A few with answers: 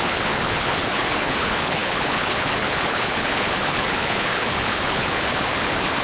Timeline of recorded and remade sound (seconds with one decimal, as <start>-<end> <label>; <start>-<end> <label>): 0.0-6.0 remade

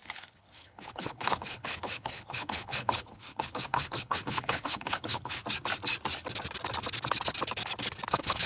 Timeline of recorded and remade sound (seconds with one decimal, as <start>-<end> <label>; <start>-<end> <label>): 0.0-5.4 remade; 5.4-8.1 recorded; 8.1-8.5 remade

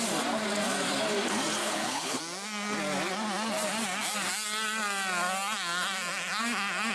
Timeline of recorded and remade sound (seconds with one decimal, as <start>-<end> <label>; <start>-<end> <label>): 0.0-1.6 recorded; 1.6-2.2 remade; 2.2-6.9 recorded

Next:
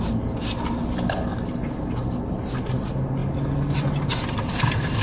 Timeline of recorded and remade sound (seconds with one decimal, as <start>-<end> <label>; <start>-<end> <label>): 0.0-5.0 recorded

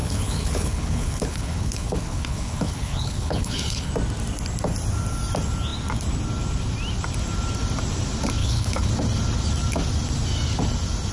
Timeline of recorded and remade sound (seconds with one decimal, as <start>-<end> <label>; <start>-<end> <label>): 0.0-3.9 remade; 3.9-8.4 recorded; 8.4-8.9 remade; 8.9-11.1 recorded